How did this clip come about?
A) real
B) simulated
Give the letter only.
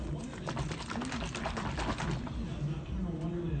A